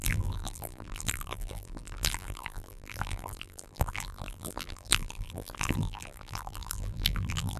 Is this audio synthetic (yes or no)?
yes